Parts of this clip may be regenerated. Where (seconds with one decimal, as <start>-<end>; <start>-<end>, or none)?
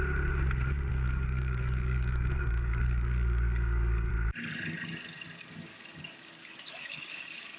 0.9-4.1; 5.7-7.6